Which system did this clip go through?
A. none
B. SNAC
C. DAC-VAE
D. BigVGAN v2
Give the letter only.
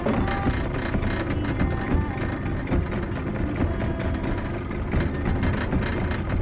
A